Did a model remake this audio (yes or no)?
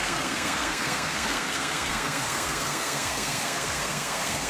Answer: yes